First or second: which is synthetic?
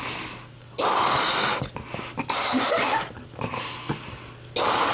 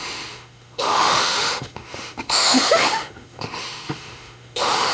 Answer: second